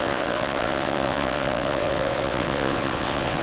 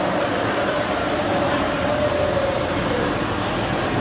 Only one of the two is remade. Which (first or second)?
first